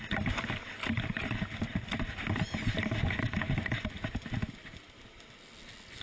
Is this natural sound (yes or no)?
yes